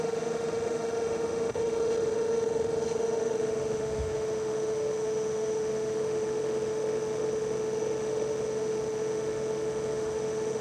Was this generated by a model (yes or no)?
yes